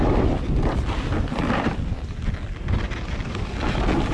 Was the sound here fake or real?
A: real